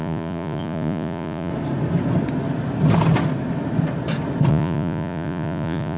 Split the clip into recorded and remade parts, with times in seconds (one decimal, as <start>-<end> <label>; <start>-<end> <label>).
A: 0.0-1.5 remade; 1.5-4.5 recorded; 4.5-6.0 remade

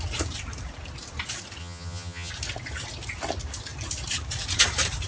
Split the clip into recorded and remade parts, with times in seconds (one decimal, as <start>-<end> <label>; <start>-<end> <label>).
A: 0.0-1.6 recorded; 1.6-2.3 remade; 2.3-5.1 recorded

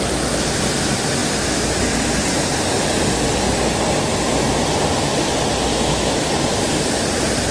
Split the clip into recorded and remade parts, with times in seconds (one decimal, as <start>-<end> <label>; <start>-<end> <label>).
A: 0.0-5.7 recorded; 5.7-6.3 remade; 6.3-7.5 recorded

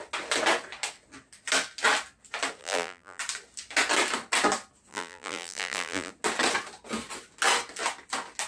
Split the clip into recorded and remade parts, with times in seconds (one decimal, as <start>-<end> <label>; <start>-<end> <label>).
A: 0.0-2.6 recorded; 2.6-3.2 remade; 3.2-4.9 recorded; 4.9-6.1 remade; 6.1-8.5 recorded

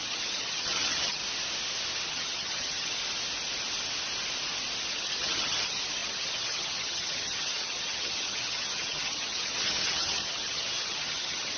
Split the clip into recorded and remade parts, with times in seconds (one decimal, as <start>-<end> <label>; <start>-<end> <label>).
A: 0.0-1.2 remade; 1.2-2.1 recorded; 2.1-3.0 remade; 3.0-4.9 recorded; 4.9-11.6 remade

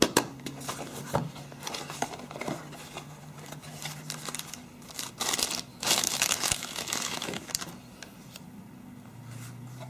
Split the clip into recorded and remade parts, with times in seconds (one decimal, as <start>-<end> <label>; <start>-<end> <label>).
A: 0.0-5.7 recorded; 5.7-7.5 remade; 7.5-9.9 recorded

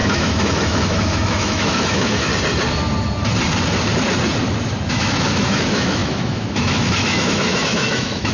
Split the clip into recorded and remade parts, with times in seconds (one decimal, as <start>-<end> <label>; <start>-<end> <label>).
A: 0.0-2.3 remade; 2.3-4.9 recorded; 4.9-8.3 remade

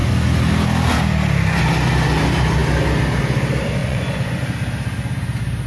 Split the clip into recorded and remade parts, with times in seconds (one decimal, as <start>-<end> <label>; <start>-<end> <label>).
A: 0.0-3.8 recorded; 3.8-4.4 remade; 4.4-5.7 recorded